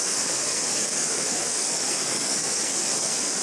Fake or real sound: fake